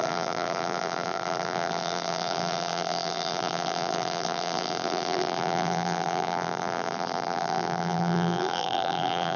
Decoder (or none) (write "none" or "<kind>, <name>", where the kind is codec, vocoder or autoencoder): vocoder, BigVGAN v2